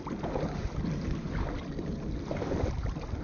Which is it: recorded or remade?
recorded